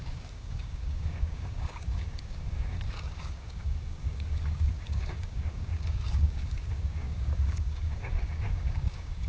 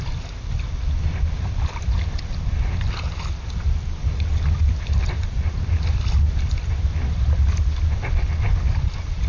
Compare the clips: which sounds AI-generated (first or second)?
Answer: first